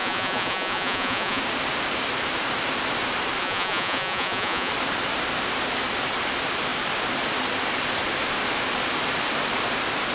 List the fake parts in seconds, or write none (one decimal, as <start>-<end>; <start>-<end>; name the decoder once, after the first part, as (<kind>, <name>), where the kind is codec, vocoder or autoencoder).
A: 0.0-1.4 (vocoder, Vocos); 3.4-4.7